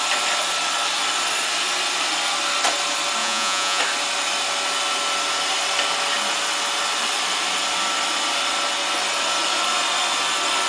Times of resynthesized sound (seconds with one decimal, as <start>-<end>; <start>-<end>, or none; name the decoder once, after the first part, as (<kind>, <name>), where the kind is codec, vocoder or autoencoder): 3.2-3.8 (vocoder, Vocos)